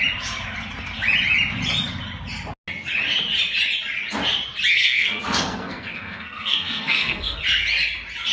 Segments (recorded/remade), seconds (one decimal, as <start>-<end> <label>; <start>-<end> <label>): 0.0-4.7 recorded; 4.7-7.4 remade; 7.4-8.3 recorded